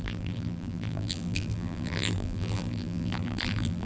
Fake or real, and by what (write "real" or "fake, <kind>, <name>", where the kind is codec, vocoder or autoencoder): fake, vocoder, BigVGAN v2